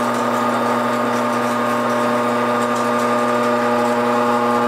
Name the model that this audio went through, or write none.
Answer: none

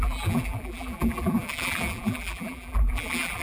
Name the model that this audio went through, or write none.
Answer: vocoder, BigVGAN v2